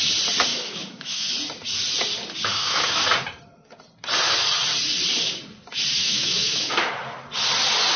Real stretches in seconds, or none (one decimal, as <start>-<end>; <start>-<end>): 0.0-0.5; 1.3-2.5; 3.1-6.0; 7.0-8.0